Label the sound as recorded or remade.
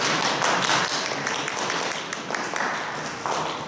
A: remade